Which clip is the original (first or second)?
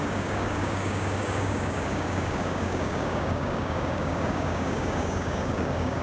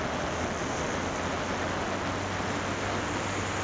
second